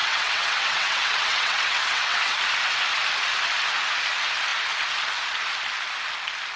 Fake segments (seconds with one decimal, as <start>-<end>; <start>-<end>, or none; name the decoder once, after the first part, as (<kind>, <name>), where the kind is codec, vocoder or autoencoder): 0.0-2.4 (vocoder, WaveNeXt)